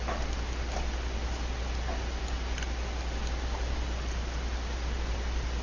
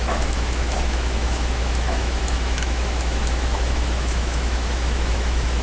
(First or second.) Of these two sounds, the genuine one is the first